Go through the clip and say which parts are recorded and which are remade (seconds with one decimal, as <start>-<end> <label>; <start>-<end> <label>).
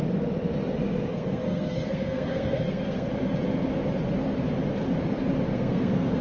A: 0.0-1.1 recorded; 1.1-3.1 remade; 3.1-5.5 recorded; 5.5-6.2 remade